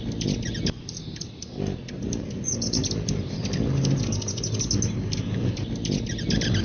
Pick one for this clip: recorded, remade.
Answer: recorded